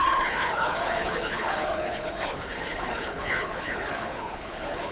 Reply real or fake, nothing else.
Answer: fake